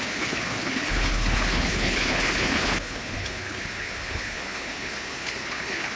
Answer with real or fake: fake